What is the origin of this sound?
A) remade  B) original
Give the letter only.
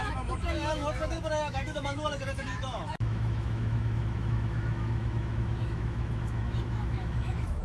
A